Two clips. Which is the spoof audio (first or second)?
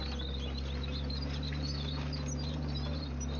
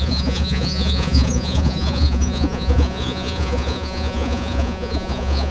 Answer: second